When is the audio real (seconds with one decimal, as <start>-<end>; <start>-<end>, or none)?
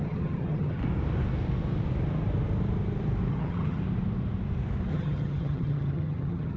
0.8-3.3; 3.8-4.9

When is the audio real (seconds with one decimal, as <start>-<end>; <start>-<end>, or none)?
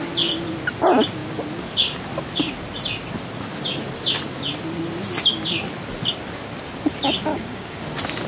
0.0-7.3; 7.8-8.3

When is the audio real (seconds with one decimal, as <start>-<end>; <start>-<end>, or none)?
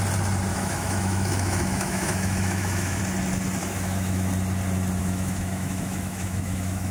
0.0-0.5; 3.0-3.6; 4.3-5.0